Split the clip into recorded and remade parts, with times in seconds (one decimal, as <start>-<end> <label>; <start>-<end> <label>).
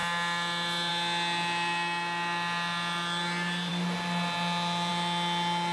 0.0-5.7 recorded